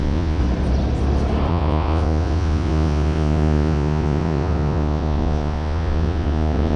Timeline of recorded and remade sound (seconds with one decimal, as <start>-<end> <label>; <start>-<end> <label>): 0.0-0.4 remade; 0.4-1.5 recorded; 1.5-6.8 remade